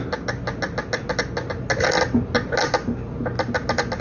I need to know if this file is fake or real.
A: real